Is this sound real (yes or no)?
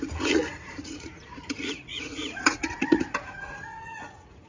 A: no